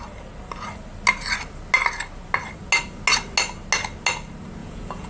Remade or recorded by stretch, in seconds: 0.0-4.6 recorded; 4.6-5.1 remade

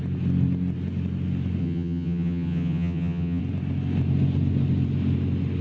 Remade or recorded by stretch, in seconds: 0.0-1.6 recorded; 1.6-3.4 remade; 3.4-5.6 recorded

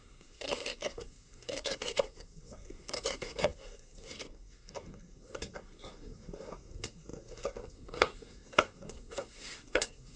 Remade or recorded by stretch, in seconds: 0.0-10.2 remade

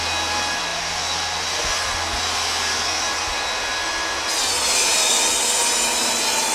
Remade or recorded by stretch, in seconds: 0.0-6.5 recorded

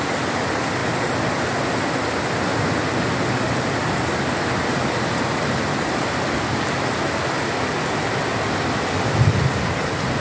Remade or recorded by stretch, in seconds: 0.0-10.2 recorded

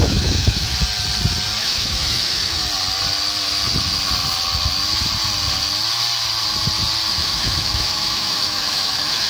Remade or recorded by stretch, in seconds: 0.0-0.7 remade; 0.7-1.6 recorded; 1.6-2.6 remade; 2.6-7.1 recorded; 7.1-9.3 remade

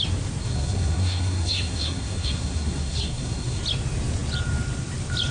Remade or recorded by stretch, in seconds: 0.0-0.4 recorded; 0.4-3.6 remade; 3.6-5.3 recorded

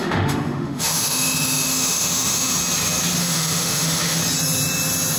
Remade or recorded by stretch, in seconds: 0.0-2.5 remade; 2.5-3.2 recorded; 3.2-4.2 remade; 4.2-5.2 recorded